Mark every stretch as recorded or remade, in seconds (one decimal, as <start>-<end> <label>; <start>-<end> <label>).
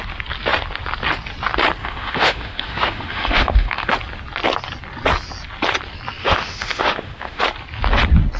0.0-1.8 recorded; 1.8-3.9 remade; 3.9-6.2 recorded; 6.2-7.4 remade; 7.4-8.4 recorded